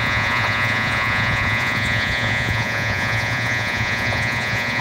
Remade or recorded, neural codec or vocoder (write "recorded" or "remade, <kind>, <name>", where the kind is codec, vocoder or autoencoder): remade, vocoder, Vocos